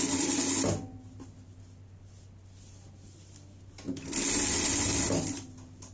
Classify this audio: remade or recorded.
recorded